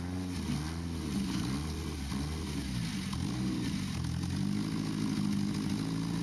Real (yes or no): yes